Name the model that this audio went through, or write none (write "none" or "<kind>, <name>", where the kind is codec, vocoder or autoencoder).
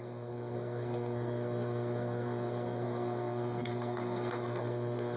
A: codec, SNAC